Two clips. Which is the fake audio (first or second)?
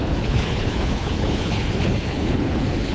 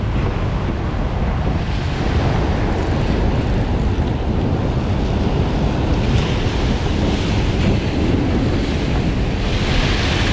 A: first